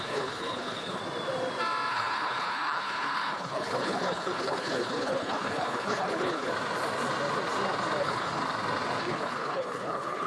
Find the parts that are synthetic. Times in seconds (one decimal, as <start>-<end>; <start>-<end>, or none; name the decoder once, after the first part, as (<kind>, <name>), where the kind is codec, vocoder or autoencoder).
0.0-1.0 (codec, HILCodec); 1.9-6.5; 8.0-8.4; 9.0-10.3